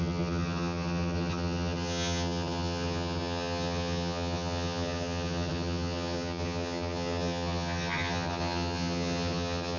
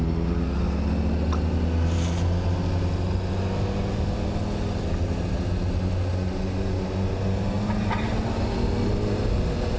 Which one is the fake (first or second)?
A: first